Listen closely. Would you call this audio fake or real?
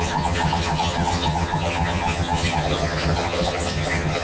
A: fake